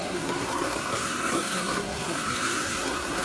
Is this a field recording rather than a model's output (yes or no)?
no